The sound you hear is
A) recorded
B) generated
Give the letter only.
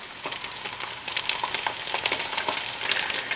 B